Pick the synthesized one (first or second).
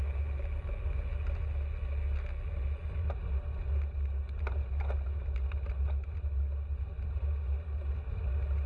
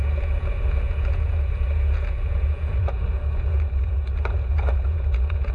second